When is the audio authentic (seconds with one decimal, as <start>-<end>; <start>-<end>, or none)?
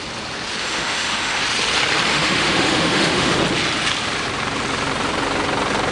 0.0-0.6; 1.4-2.1; 3.4-5.9